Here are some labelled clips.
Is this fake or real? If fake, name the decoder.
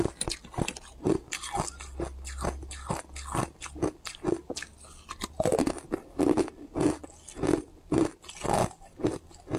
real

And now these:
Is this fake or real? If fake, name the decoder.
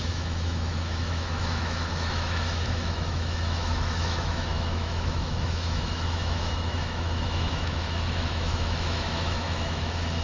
fake, autoencoder, DAC-VAE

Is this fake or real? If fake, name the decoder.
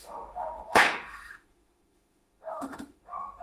fake, autoencoder, DAC-VAE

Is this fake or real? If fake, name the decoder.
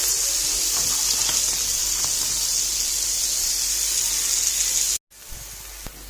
real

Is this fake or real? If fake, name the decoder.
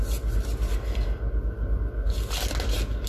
real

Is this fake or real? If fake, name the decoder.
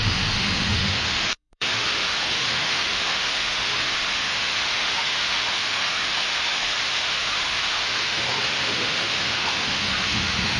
fake, autoencoder, DAC-VAE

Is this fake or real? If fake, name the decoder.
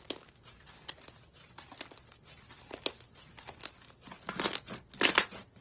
real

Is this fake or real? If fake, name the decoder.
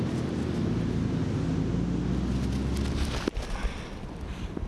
real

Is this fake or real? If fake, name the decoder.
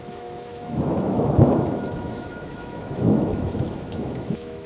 fake, autoencoder, DAC-VAE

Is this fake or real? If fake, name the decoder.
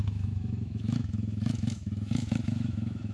fake, autoencoder, DAC-VAE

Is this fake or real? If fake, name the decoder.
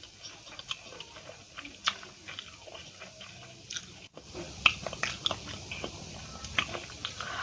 real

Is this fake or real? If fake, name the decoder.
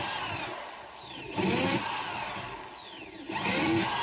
real